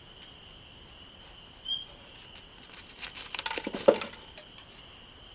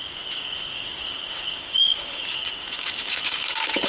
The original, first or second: first